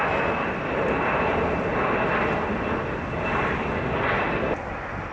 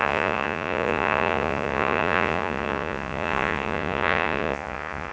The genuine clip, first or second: first